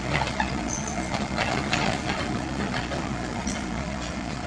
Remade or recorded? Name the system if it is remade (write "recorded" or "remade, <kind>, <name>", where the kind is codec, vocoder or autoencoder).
remade, vocoder, Vocos